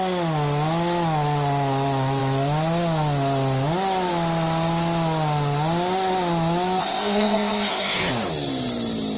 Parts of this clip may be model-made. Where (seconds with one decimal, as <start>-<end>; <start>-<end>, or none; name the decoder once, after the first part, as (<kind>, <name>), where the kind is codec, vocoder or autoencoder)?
6.8-8.1 (codec, ZipCodec)